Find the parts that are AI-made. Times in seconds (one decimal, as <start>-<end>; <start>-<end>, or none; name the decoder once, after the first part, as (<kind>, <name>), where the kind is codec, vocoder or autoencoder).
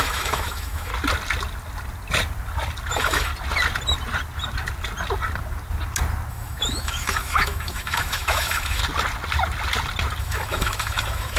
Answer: 0.0-0.9 (autoencoder, DAC-VAE); 2.9-3.3; 6.3-8.8; 10.2-11.4